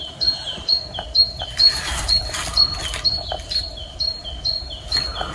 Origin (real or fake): fake